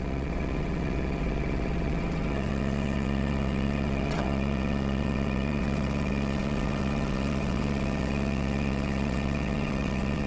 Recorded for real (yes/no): no